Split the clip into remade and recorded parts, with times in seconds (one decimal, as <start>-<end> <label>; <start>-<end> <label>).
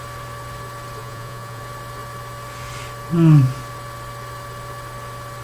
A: 0.0-1.0 recorded; 1.0-1.6 remade; 1.6-5.4 recorded